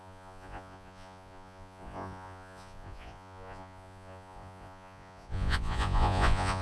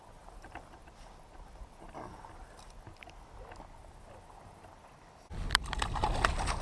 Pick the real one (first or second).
second